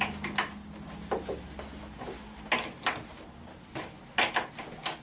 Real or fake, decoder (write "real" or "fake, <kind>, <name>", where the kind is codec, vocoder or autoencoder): real